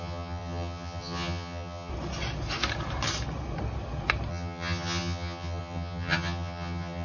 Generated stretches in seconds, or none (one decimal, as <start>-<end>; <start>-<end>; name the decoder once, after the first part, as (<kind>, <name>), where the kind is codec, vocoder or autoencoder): 0.0-1.9 (vocoder, HiFi-GAN); 4.3-7.0

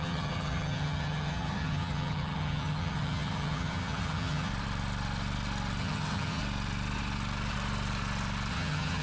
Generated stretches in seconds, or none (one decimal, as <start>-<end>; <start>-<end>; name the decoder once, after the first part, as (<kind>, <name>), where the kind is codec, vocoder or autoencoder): 0.0-4.5 (vocoder, HiFi-GAN); 5.8-6.4; 8.5-9.0